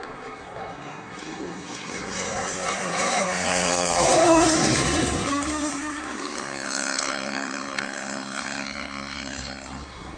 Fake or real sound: fake